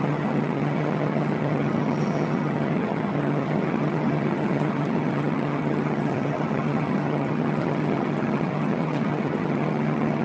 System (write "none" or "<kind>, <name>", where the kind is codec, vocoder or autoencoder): vocoder, HiFi-GAN